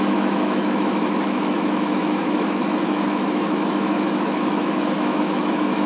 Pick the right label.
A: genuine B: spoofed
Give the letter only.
B